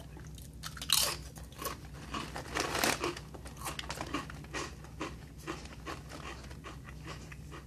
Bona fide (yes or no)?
yes